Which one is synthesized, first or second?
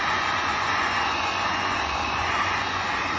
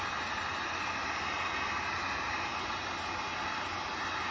first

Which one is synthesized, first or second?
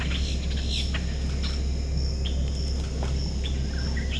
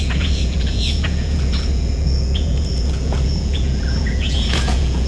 second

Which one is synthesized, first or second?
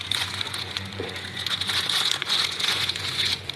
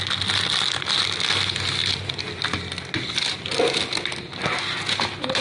first